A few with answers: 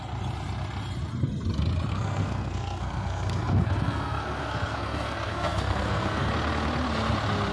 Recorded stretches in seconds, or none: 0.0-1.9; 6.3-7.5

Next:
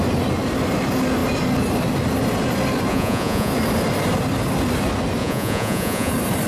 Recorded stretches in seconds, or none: 0.0-2.9; 3.5-5.2; 6.1-6.5

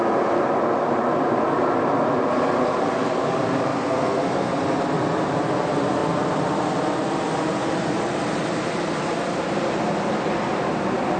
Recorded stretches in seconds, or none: 0.0-3.7; 4.5-11.2

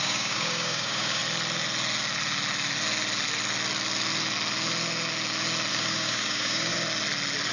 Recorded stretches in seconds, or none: 1.2-5.7; 6.7-7.5

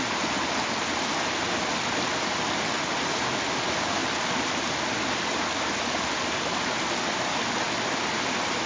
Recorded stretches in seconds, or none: 0.0-8.7

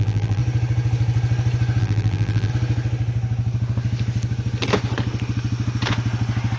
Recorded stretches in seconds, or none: 0.4-1.8; 2.5-6.6